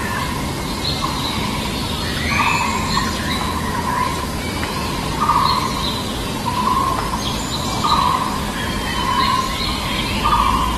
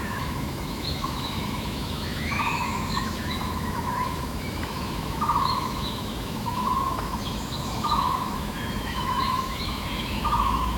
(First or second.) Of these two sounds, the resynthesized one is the second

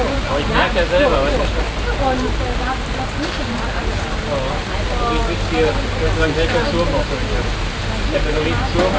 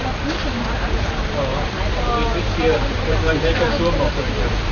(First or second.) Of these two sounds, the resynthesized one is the second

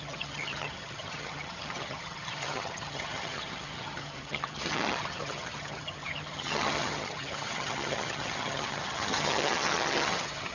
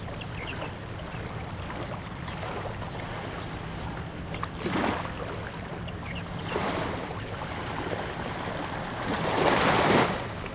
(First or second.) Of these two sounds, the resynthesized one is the first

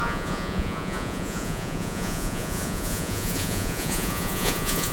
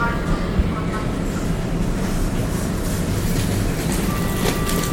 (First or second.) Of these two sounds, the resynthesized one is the first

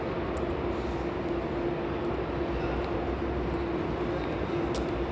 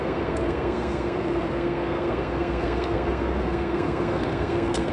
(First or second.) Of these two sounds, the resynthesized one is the second